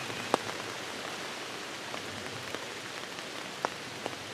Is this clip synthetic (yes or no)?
no